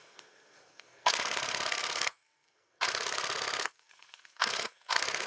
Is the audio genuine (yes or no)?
no